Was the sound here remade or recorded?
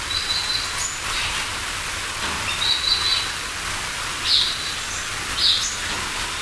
recorded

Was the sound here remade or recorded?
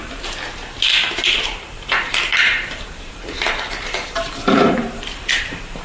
remade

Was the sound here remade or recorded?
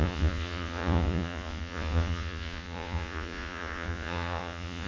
remade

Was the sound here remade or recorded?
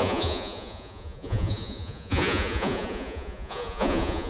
remade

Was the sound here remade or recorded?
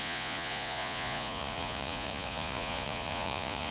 remade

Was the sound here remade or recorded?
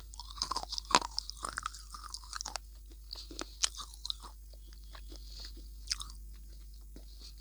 recorded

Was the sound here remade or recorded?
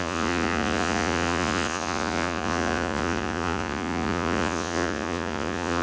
remade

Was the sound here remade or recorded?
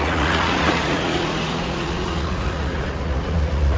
remade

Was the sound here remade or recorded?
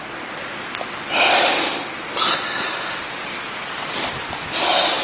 recorded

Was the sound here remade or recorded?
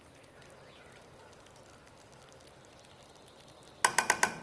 recorded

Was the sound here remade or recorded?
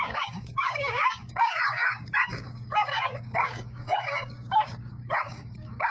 remade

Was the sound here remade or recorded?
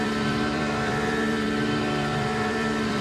remade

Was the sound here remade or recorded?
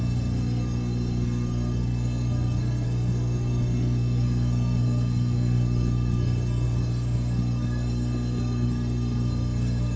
remade